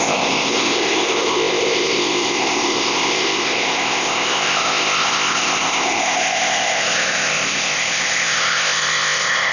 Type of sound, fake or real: fake